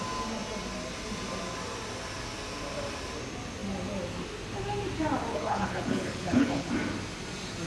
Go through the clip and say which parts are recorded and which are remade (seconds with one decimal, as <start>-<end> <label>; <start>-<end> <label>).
0.0-5.3 recorded; 5.3-6.7 remade; 6.7-7.7 recorded